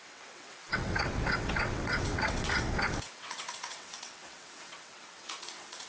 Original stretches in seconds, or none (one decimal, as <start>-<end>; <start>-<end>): none